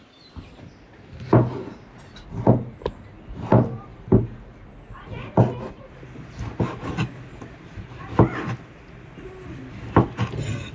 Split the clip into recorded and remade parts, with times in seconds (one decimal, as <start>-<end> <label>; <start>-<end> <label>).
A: 0.0-10.7 recorded